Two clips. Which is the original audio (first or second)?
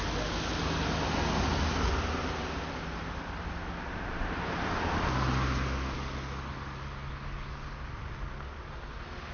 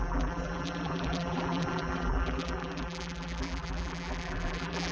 first